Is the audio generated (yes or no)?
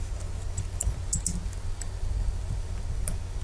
no